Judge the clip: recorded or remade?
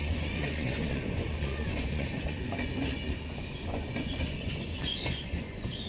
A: remade